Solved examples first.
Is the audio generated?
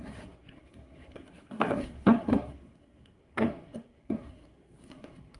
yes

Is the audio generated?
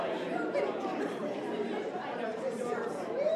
yes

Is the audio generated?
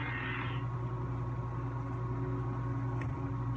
no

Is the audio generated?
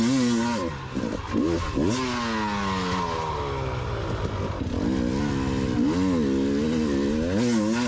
no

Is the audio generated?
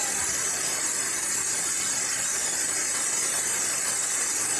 no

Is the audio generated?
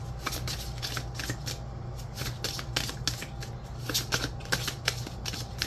no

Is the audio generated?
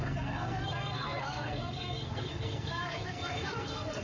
yes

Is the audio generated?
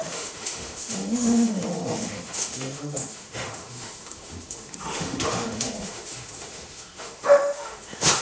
yes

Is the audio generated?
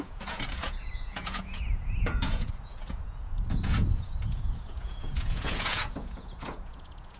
yes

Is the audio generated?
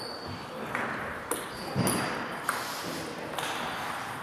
no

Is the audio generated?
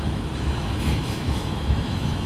yes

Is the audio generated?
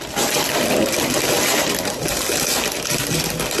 no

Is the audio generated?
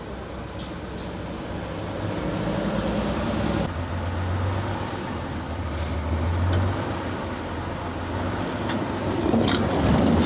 no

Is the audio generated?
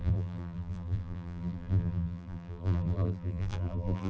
yes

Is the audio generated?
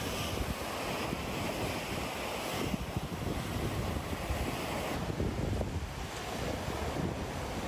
no